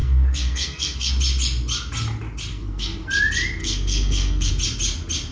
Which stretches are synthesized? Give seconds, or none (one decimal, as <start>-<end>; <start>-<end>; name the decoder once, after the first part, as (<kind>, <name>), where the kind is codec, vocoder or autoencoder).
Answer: 0.0-1.1 (codec, SNAC); 2.5-3.1; 3.6-4.5